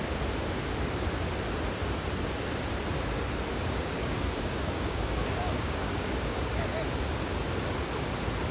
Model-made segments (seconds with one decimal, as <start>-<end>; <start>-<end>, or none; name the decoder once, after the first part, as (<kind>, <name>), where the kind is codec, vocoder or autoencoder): 3.5-6.8 (codec, DAC)